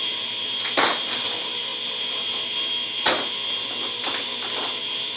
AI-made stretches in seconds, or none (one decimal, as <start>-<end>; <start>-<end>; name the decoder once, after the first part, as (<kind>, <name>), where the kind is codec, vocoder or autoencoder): none